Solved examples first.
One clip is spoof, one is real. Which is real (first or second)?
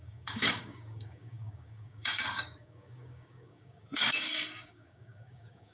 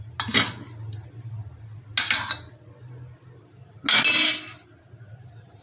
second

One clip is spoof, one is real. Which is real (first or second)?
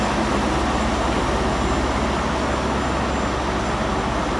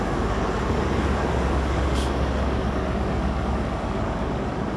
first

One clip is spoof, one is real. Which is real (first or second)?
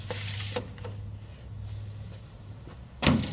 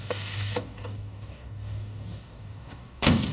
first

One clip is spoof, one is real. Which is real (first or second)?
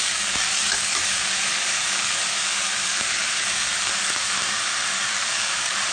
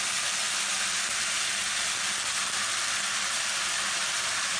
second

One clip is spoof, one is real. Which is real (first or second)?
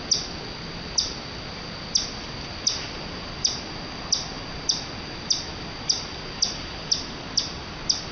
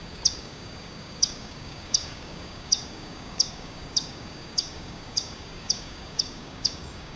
first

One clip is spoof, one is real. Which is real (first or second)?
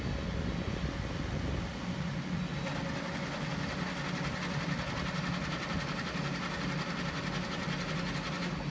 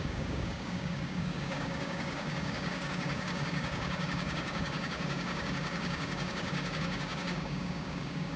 first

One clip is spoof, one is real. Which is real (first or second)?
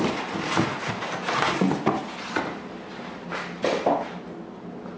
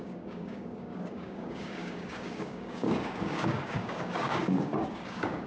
first